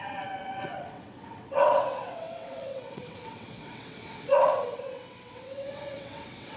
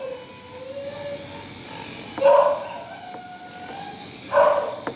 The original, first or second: second